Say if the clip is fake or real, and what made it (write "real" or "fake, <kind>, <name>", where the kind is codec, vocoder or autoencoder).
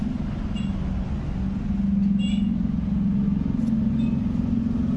real